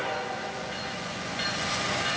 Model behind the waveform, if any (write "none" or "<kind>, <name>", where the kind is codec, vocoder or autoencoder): vocoder, Vocos